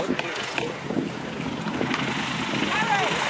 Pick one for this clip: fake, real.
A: real